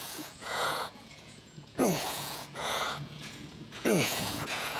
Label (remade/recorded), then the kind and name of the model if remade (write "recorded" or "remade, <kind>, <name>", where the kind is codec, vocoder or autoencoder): remade, vocoder, Vocos